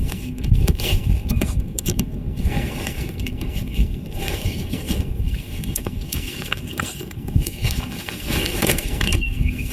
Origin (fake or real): fake